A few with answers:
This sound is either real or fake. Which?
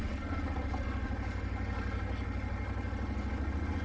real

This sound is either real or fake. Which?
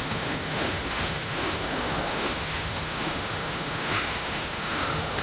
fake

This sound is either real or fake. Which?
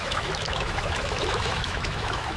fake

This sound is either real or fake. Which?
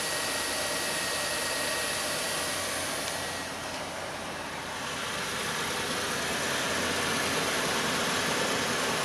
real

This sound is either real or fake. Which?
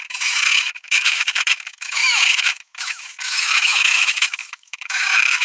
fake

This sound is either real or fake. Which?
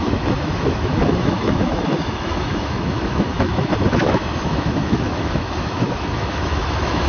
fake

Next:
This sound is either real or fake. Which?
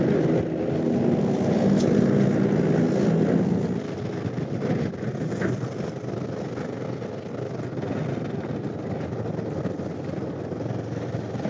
real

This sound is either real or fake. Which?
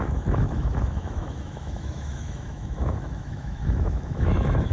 fake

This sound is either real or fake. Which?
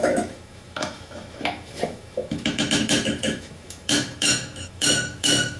fake